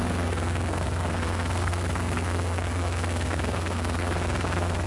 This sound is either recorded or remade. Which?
remade